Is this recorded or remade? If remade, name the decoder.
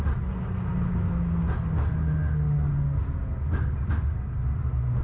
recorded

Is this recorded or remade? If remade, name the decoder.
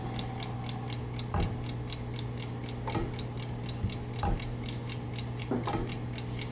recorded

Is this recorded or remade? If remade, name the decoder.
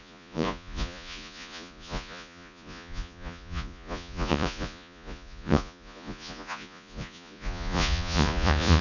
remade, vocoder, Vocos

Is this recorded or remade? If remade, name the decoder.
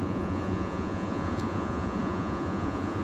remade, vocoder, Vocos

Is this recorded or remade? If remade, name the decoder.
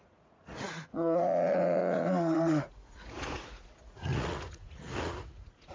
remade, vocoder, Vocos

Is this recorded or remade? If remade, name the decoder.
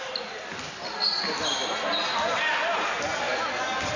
recorded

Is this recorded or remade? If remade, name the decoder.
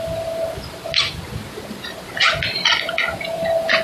recorded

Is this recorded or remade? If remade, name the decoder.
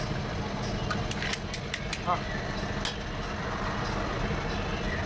recorded